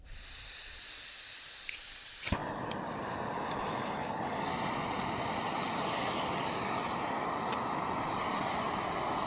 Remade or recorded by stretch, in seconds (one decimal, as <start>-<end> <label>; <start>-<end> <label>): 0.0-9.3 recorded